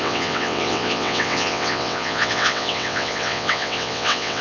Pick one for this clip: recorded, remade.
remade